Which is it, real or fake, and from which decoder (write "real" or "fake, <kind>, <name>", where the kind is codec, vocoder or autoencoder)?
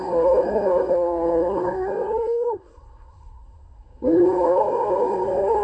fake, codec, SNAC